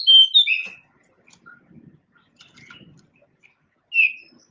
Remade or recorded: recorded